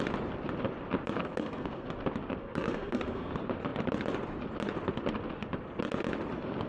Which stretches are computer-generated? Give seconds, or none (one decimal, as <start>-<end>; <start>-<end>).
1.2-1.9; 2.4-3.3